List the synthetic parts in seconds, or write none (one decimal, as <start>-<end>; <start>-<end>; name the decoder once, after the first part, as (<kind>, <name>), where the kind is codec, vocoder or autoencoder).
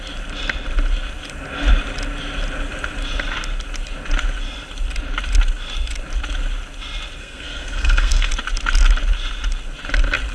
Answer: 7.2-8.3 (codec, SNAC)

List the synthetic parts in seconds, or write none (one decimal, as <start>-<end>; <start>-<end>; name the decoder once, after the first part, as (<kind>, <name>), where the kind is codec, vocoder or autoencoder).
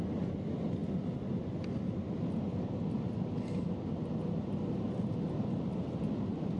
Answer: none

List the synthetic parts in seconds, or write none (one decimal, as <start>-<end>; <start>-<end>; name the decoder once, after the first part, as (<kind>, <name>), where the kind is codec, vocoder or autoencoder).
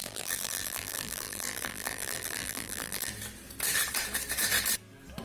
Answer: 0.0-3.1 (vocoder, BigVGAN v2)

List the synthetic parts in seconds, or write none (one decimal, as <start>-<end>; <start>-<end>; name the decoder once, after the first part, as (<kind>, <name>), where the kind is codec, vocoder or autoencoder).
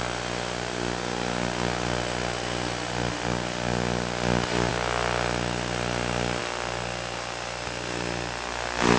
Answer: none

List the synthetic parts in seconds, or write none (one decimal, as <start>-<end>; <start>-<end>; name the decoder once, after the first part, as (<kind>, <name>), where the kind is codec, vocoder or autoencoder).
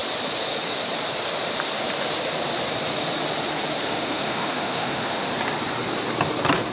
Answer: 3.8-5.3 (autoencoder, DAC-VAE)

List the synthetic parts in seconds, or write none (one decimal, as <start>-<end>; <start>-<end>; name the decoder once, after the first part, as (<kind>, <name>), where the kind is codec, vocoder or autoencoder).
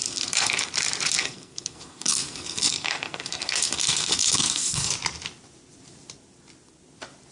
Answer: 0.0-0.7 (codec, SNAC); 1.2-4.9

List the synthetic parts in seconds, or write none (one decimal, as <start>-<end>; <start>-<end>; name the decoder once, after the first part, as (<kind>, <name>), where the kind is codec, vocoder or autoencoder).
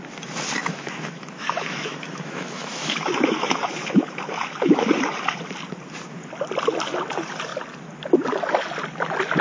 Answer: 0.6-5.0 (autoencoder, DAC-VAE)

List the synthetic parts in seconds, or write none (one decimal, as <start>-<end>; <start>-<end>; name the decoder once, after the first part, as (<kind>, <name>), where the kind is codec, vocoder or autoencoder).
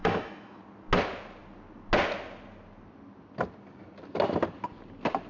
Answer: 0.0-0.6 (autoencoder, DAC-VAE)